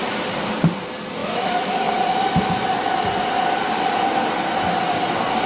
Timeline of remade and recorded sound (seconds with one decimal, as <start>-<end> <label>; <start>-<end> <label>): 0.0-1.2 recorded; 1.2-1.9 remade; 1.9-5.5 recorded